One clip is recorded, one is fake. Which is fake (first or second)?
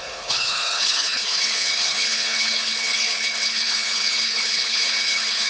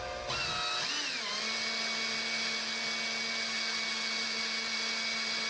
first